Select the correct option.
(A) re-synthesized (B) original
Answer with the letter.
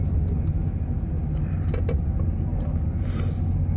B